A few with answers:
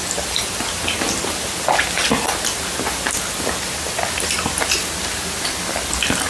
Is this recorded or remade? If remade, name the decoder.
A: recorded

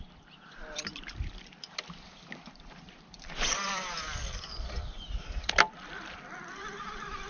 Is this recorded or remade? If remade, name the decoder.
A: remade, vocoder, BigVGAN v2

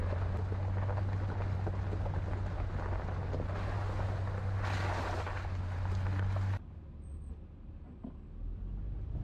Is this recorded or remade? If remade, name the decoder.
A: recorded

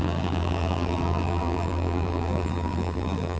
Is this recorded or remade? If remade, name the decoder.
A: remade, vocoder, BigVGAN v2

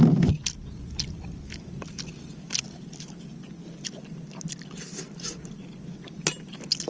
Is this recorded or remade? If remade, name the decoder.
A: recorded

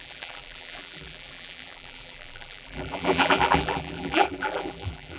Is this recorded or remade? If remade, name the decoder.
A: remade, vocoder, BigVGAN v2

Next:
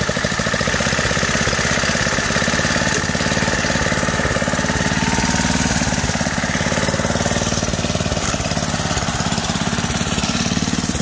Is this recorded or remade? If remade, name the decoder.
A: recorded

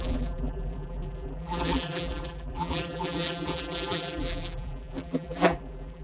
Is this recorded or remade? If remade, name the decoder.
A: remade, vocoder, BigVGAN v2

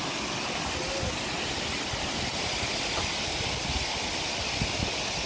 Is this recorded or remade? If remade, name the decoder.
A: recorded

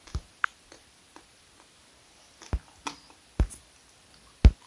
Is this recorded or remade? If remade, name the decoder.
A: recorded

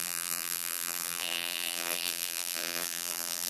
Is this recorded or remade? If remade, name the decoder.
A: remade, vocoder, BigVGAN v2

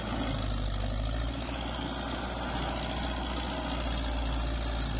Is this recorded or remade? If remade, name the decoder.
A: recorded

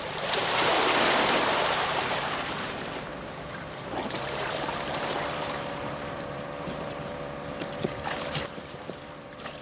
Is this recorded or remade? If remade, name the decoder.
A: remade, vocoder, BigVGAN v2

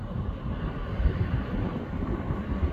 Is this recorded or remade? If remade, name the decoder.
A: remade, vocoder, BigVGAN v2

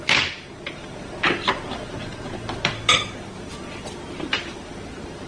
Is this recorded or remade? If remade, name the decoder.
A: remade, vocoder, BigVGAN v2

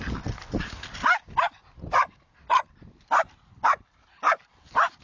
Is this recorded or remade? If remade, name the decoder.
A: recorded